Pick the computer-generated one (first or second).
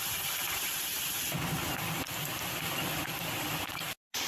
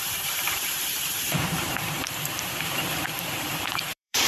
second